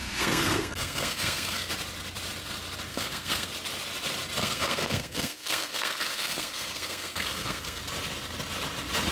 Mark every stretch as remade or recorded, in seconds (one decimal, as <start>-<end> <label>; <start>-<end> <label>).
0.0-1.7 remade; 1.7-2.9 recorded; 2.9-3.5 remade; 3.5-4.4 recorded; 4.4-7.8 remade; 7.8-9.1 recorded